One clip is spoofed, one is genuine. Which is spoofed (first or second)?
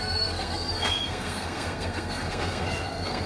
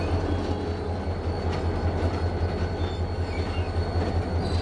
first